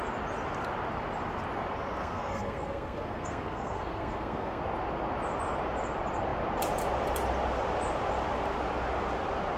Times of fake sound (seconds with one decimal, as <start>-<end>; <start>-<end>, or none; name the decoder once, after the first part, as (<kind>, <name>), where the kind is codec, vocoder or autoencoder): 2.0-4.6 (codec, SNAC)